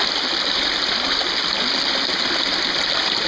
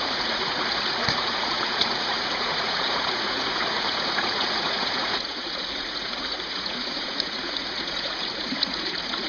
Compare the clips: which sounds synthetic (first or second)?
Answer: second